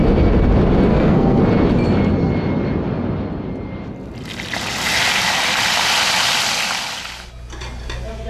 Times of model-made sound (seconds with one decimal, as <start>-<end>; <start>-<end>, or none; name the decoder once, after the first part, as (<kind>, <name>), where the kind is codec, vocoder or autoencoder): 0.9-1.4 (codec, SNAC)